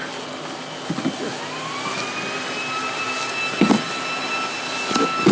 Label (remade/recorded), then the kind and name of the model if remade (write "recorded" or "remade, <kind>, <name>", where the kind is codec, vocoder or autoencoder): recorded